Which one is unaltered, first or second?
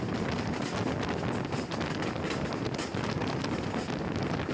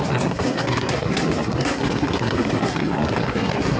first